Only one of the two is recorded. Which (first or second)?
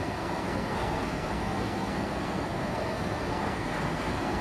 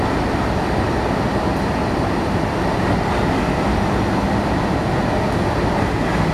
second